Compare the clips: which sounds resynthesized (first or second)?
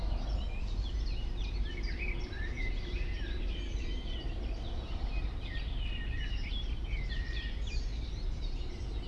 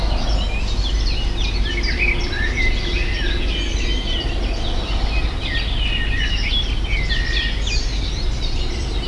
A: first